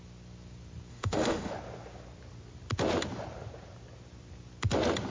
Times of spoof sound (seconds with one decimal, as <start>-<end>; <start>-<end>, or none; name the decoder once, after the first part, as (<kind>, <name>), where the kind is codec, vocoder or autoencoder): 0.9-1.5 (autoencoder, DAC-VAE)